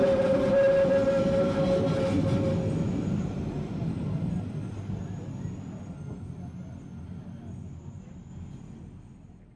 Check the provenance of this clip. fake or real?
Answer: real